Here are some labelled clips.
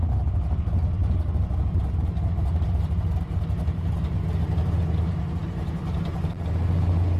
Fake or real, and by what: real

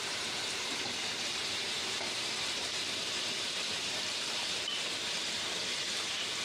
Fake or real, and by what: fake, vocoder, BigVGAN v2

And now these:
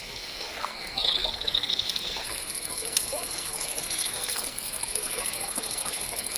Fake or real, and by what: fake, codec, SNAC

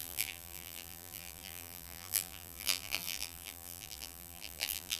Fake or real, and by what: fake, vocoder, BigVGAN v2